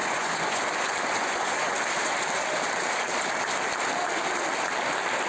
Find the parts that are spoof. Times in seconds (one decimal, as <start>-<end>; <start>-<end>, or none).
0.0-0.6; 1.2-1.7